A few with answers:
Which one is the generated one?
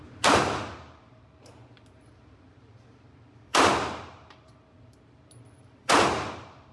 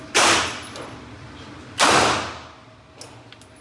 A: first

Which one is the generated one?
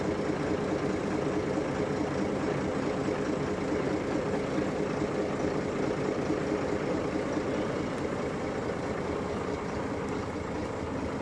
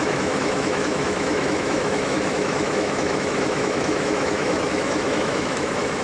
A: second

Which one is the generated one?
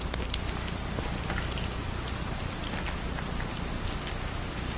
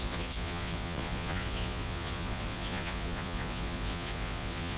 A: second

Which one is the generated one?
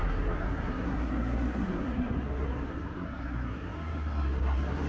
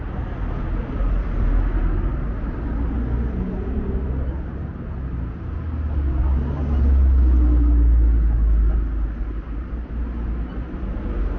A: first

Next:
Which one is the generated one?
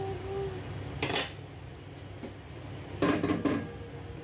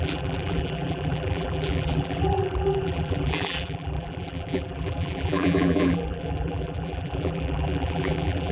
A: second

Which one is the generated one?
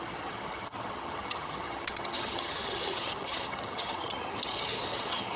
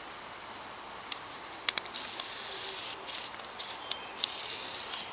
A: first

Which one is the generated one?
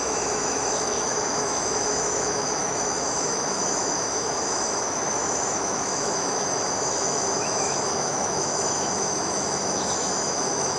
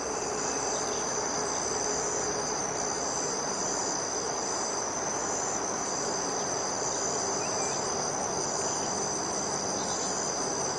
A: first